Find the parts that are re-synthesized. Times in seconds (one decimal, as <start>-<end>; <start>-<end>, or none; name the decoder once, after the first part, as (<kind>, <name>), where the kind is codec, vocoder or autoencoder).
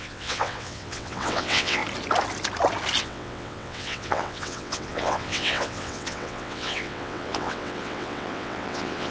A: 0.0-1.8 (vocoder, WaveNeXt); 3.0-9.1